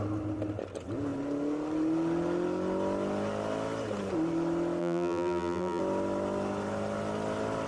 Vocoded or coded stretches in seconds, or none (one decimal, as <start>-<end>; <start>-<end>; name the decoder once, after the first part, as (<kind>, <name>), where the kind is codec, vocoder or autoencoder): 4.8-5.8 (vocoder, BigVGAN v2)